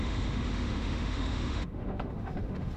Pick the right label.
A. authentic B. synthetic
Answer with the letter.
B